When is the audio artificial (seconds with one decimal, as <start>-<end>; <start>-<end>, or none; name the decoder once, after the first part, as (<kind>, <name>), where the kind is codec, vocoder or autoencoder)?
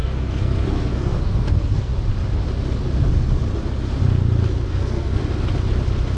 0.0-1.9 (codec, SNAC); 4.7-5.2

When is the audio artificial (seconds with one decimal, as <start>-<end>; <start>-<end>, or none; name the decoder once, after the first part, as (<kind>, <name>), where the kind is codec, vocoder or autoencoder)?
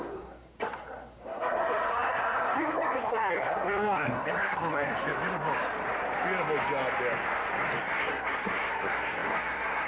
0.0-4.9 (codec, SNAC); 7.8-9.9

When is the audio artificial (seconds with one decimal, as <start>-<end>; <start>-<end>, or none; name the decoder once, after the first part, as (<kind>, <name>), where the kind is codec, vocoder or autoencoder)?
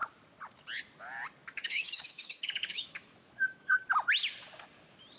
1.4-3.7 (autoencoder, DAC-VAE)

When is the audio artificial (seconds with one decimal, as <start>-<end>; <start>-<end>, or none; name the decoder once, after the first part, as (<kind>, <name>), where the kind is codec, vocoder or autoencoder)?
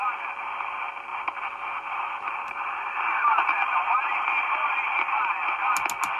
1.1-4.8 (vocoder, BigVGAN v2)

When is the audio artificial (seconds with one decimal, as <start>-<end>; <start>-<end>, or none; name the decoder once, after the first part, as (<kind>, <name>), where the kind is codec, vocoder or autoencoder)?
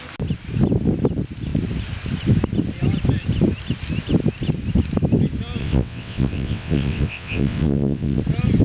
5.6-8.2 (vocoder, WaveNeXt)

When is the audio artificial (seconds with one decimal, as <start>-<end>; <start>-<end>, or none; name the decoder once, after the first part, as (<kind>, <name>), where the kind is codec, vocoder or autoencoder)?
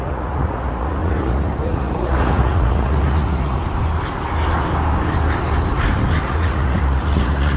0.0-3.6 (vocoder, Vocos); 6.2-7.6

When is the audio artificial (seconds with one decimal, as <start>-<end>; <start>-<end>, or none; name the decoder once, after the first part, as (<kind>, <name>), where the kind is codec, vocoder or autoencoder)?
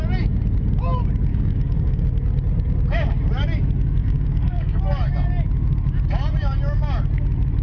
1.3-2.0 (codec, DAC); 4.0-4.8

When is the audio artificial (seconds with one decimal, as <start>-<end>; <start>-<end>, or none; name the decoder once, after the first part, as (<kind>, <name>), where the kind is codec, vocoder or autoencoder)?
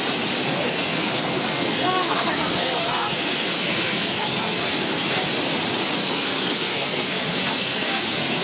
0.4-5.2 (codec, SNAC); 6.0-8.4